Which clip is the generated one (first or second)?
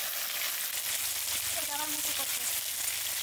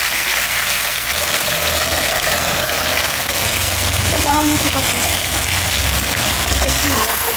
second